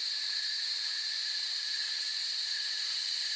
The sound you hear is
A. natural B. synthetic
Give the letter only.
B